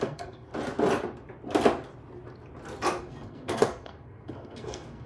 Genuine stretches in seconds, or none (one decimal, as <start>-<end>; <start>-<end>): 0.5-3.0